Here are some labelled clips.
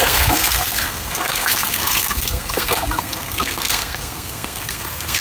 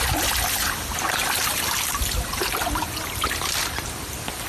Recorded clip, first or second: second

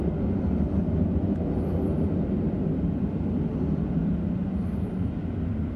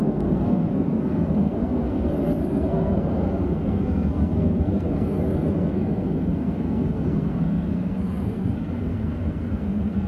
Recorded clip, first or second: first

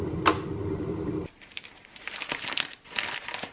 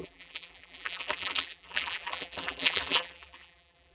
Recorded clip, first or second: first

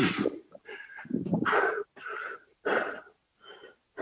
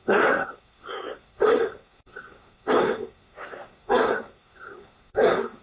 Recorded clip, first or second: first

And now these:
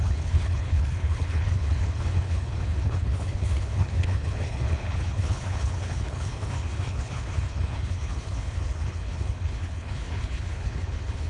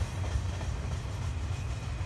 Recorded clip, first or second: second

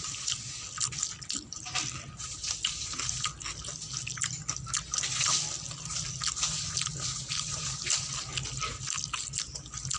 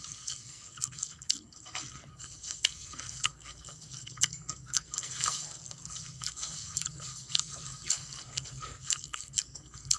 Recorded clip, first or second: first